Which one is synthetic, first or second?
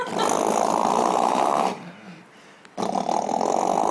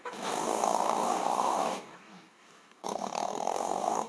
second